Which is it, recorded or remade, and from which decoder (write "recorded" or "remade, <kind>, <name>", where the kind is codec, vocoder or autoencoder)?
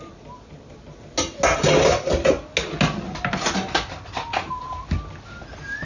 recorded